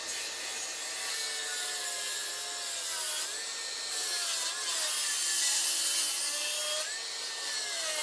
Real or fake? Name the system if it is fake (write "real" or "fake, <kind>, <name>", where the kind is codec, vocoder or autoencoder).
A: real